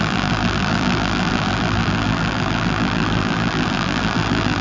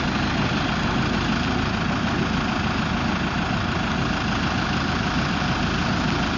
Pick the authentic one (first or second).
second